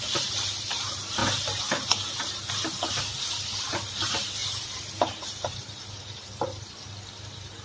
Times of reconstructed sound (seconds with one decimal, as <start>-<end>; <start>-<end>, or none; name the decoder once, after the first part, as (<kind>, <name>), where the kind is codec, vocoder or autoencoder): none